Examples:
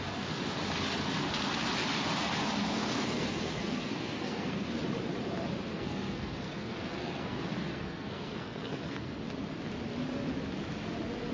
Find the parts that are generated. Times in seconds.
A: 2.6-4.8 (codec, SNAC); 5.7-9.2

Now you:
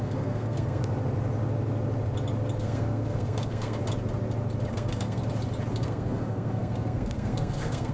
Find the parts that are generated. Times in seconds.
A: 0.0-0.8 (codec, SNAC); 2.6-3.8; 4.7-5.2; 5.7-7.9

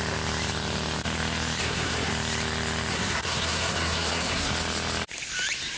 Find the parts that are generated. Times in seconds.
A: 1.6-2.1 (codec, SNAC); 2.9-4.5

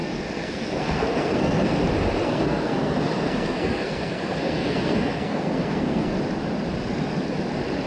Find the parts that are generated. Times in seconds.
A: 0.0-1.8 (codec, SNAC); 2.2-6.2

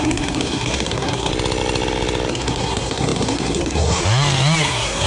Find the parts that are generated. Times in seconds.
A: 0.0-1.3 (codec, SNAC); 2.3-4.0; 4.6-5.1

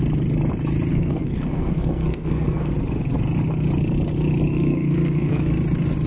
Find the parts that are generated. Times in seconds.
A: 0.9-2.7 (codec, SNAC); 4.5-5.5

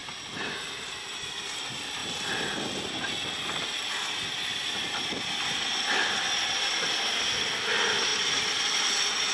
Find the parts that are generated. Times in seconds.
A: none

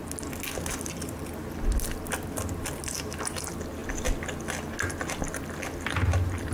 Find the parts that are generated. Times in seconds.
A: none